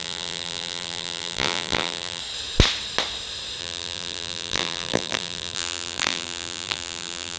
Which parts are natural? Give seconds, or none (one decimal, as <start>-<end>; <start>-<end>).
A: 2.2-3.6